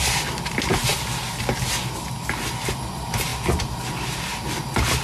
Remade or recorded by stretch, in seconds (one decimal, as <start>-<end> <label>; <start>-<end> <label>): 0.0-5.0 recorded